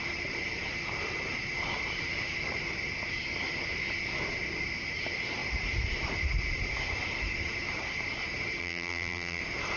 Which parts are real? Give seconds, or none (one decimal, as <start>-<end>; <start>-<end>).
0.0-8.6; 9.4-9.8